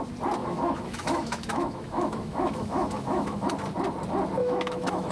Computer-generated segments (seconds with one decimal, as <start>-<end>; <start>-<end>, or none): 0.4-3.5; 4.4-5.1